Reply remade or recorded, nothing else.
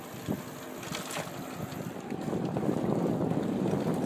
recorded